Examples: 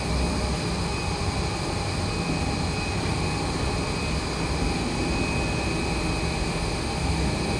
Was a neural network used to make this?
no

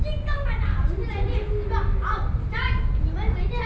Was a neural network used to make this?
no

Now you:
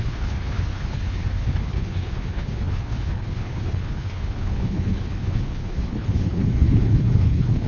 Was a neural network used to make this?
yes